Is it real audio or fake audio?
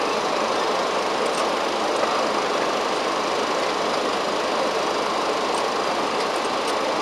real